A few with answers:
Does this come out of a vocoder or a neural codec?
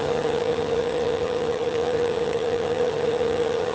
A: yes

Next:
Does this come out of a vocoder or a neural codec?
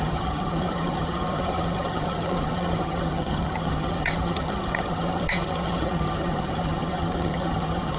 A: yes